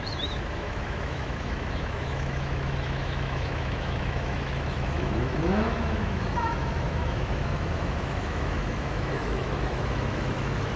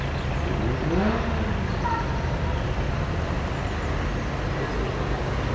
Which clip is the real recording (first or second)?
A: second